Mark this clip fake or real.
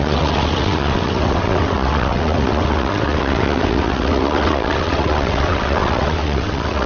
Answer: fake